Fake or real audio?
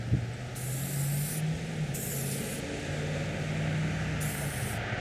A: real